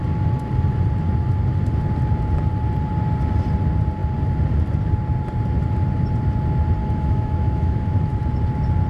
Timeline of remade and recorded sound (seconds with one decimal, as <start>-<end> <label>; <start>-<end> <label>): 0.0-6.8 recorded; 6.8-8.2 remade; 8.2-8.9 recorded